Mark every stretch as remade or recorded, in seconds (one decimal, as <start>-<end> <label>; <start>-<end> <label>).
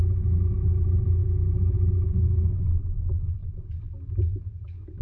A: 0.0-1.2 recorded; 1.2-2.1 remade; 2.1-5.0 recorded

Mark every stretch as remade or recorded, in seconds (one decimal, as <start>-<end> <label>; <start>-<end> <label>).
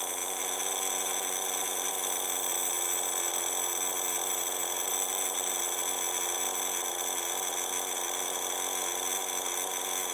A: 0.0-0.4 recorded; 0.4-1.9 remade; 1.9-4.9 recorded; 4.9-5.6 remade; 5.6-10.1 recorded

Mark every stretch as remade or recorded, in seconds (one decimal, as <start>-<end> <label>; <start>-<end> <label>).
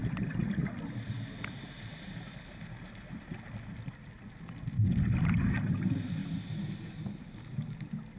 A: 0.0-8.2 recorded